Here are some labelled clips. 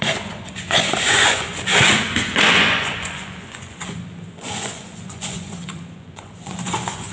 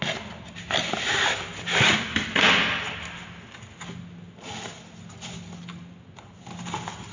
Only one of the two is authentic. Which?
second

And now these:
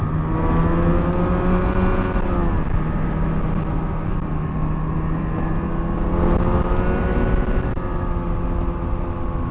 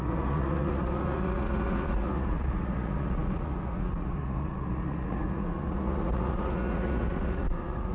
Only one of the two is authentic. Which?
first